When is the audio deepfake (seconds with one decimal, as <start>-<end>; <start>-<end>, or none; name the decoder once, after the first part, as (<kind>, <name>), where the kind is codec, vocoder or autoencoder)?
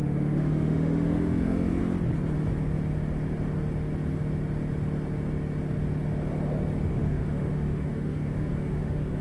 0.0-1.8 (autoencoder, DAC-VAE); 6.9-9.2